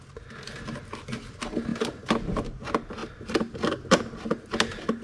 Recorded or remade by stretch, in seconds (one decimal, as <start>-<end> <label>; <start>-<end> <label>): 0.0-5.0 recorded